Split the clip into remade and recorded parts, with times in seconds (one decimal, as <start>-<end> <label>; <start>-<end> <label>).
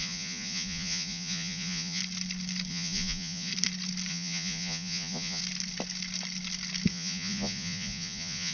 0.0-2.0 remade; 2.0-2.7 recorded; 2.7-3.5 remade; 3.5-4.1 recorded; 4.1-5.4 remade; 5.4-6.9 recorded; 6.9-8.5 remade